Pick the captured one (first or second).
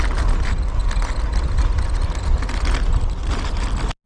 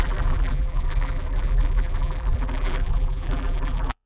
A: first